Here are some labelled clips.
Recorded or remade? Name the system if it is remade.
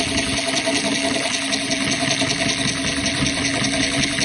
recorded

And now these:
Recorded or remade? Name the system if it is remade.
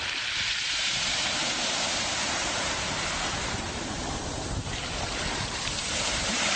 remade, vocoder, BigVGAN v2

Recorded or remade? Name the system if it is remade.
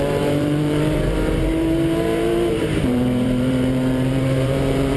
remade, vocoder, BigVGAN v2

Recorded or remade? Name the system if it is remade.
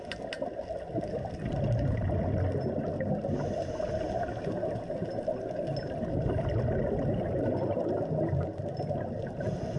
recorded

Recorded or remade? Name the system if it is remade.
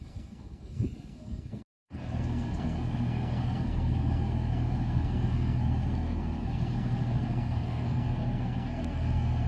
remade, codec, SNAC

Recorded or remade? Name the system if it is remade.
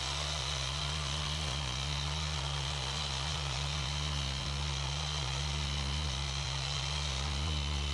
remade, vocoder, Vocos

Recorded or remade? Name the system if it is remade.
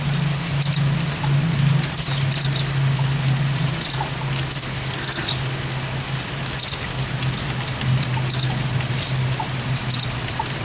recorded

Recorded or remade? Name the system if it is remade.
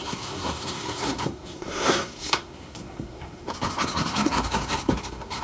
remade, codec, SNAC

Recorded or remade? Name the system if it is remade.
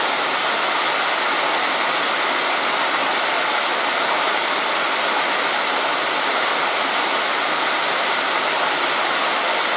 recorded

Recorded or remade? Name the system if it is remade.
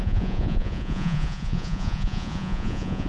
remade, vocoder, Vocos